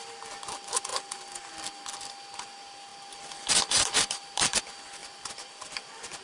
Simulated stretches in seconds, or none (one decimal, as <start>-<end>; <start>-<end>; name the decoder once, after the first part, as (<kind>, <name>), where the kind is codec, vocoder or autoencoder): 0.9-1.5 (vocoder, BigVGAN v2); 2.9-4.6; 5.0-6.2